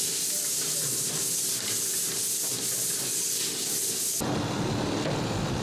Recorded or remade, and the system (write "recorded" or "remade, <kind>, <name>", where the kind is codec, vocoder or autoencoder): recorded